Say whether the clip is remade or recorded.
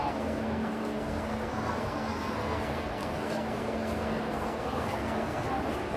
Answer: remade